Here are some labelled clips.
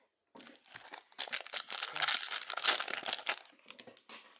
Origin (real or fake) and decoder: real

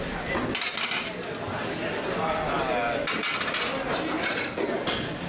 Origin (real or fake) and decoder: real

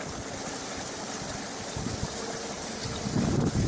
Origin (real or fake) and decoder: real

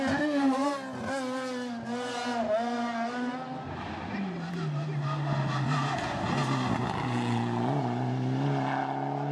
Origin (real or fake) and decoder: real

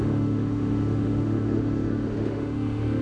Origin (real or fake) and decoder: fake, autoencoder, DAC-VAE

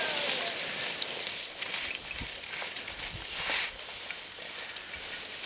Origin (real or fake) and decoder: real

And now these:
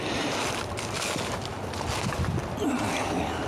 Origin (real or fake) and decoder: real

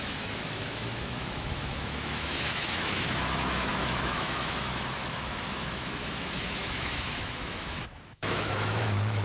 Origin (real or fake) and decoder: fake, autoencoder, DAC-VAE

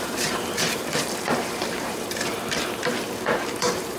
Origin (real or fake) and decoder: fake, vocoder, BigVGAN v2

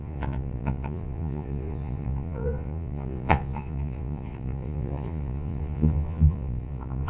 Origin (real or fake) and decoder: fake, vocoder, Vocos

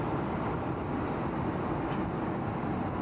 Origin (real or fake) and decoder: real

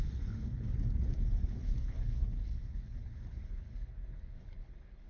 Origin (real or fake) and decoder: fake, codec, HILCodec